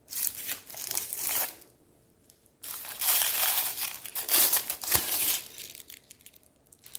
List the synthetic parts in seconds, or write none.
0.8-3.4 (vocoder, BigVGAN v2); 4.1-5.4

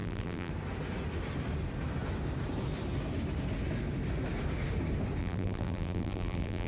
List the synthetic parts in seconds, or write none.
0.0-0.5 (vocoder, BigVGAN v2); 5.2-6.7

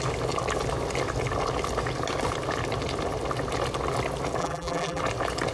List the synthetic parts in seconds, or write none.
4.4-5.0 (vocoder, BigVGAN v2)

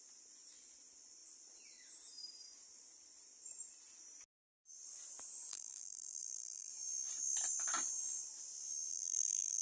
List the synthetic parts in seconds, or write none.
5.5-6.7 (vocoder, BigVGAN v2); 8.9-9.6

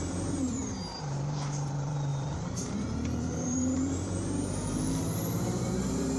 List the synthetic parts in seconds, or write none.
0.0-6.2 (vocoder, BigVGAN v2)

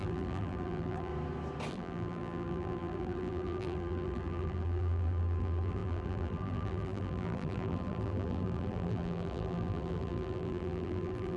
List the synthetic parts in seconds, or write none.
0.0-1.1 (vocoder, BigVGAN v2); 1.7-11.4